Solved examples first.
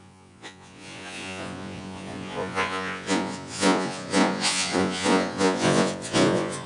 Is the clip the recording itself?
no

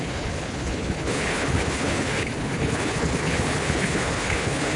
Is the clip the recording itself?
no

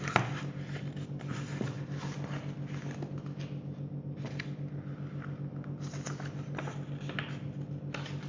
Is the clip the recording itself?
yes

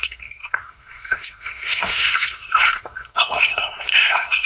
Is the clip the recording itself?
no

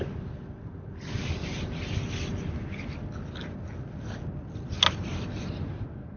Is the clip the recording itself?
yes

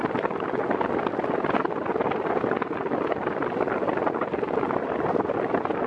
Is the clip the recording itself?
yes